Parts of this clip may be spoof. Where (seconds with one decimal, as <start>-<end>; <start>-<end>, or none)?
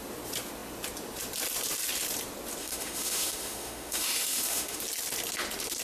2.6-4.8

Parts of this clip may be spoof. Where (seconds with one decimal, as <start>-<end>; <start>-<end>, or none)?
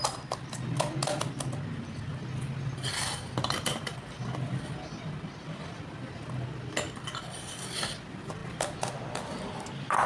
none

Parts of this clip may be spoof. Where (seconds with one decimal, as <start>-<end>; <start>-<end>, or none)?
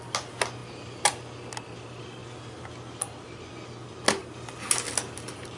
none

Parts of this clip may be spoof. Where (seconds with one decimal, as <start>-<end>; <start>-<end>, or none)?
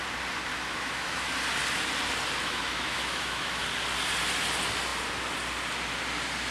0.5-1.3; 2.4-3.6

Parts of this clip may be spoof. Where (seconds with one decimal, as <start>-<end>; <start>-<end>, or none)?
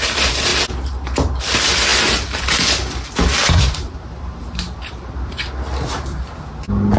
none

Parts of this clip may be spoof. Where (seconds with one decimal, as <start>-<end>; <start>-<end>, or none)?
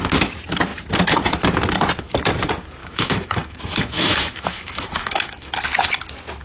2.8-5.5